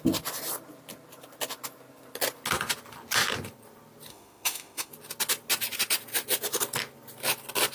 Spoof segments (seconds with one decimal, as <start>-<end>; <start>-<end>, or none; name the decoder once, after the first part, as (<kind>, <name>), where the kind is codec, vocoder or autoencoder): 4.1-4.9 (autoencoder, DAC-VAE)